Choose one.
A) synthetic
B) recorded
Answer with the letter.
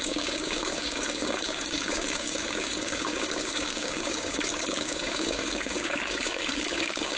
A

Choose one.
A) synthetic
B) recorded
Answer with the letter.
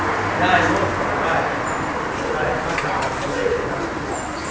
B